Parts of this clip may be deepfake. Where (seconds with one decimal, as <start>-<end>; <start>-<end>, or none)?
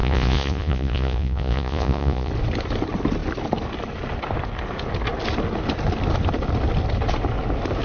0.0-2.3